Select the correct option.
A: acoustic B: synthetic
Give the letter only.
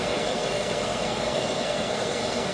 B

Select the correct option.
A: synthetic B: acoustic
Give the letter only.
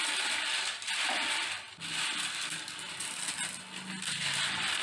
B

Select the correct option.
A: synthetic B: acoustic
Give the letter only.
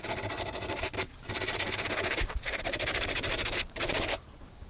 A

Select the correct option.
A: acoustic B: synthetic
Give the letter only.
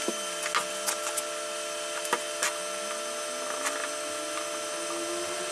A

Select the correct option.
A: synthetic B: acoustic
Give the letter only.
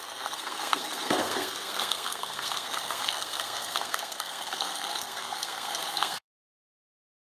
A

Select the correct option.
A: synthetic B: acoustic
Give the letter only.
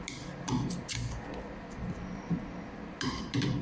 B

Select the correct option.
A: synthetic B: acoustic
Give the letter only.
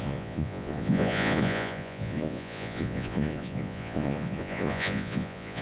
A